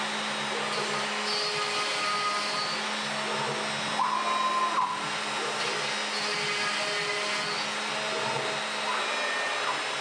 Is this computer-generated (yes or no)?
no